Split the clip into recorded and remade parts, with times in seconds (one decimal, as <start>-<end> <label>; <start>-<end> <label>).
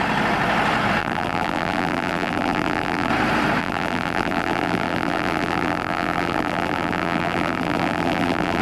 0.0-1.0 recorded; 1.0-3.1 remade; 3.1-3.6 recorded; 3.6-8.6 remade